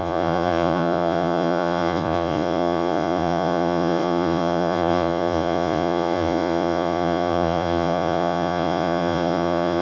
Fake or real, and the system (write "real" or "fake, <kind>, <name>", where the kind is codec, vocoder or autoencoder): fake, vocoder, Vocos